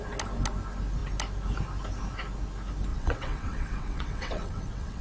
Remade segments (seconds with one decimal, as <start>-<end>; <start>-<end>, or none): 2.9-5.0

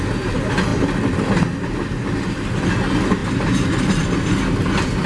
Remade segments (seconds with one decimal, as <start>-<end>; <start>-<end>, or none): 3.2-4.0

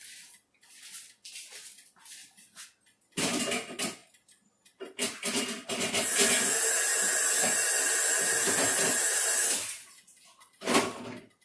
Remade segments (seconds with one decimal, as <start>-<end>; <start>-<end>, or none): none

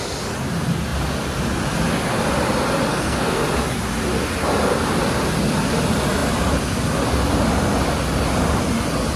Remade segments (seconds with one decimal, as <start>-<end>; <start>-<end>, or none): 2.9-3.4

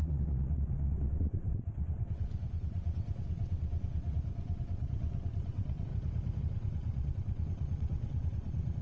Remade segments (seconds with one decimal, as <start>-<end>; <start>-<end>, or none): 0.0-5.9; 6.4-8.8

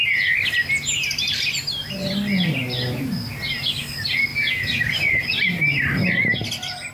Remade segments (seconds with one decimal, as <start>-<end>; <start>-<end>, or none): 4.3-5.3